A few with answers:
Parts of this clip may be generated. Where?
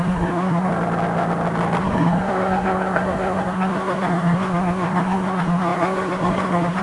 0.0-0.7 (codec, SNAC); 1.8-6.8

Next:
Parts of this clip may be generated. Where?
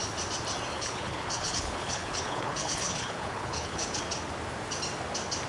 0.7-4.0 (codec, HILCodec)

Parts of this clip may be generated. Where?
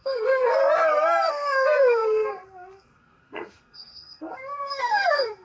0.0-0.6 (codec, SNAC); 1.3-5.4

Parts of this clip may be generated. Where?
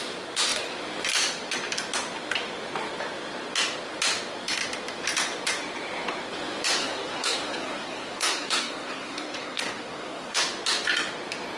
6.8-10.4 (codec, SNAC)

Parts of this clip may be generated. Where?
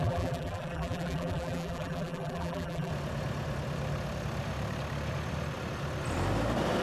0.0-2.9 (vocoder, BigVGAN v2)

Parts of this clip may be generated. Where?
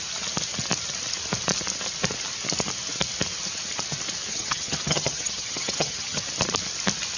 4.3-6.2 (vocoder, HiFi-GAN)